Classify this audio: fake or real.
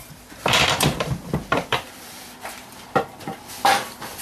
fake